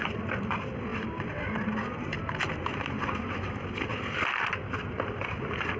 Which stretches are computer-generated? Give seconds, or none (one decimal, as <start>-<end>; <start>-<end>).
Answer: none